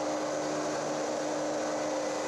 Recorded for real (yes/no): yes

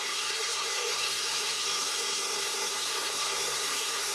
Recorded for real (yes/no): no